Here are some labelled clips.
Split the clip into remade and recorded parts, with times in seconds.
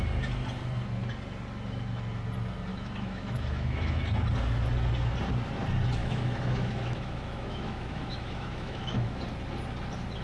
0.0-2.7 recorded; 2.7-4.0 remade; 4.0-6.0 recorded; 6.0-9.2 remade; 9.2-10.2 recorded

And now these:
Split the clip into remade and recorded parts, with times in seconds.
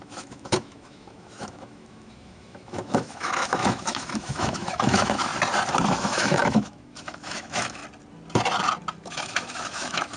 0.0-5.3 remade; 5.3-5.9 recorded; 5.9-7.8 remade; 7.8-9.1 recorded; 9.1-10.2 remade